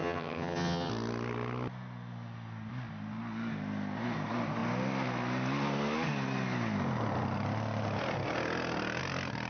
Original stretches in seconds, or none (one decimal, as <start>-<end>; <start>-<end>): 0.9-9.5